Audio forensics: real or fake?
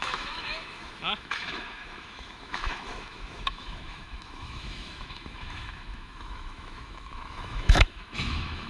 fake